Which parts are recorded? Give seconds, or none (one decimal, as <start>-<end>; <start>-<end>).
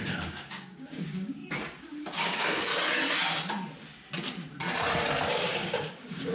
1.4-2.1; 2.7-5.3